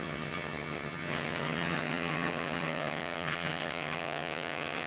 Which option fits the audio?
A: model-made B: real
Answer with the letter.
A